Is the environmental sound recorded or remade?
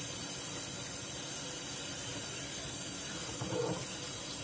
recorded